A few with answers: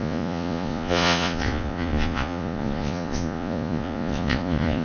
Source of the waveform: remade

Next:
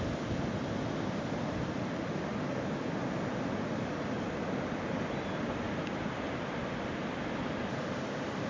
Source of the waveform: recorded